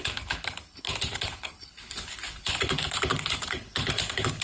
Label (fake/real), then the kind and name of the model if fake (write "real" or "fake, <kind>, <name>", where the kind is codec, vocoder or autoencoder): fake, codec, HILCodec